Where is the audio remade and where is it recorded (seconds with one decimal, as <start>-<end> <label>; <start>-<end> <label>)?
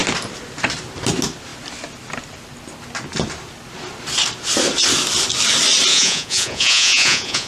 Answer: 0.0-5.9 recorded; 5.9-7.5 remade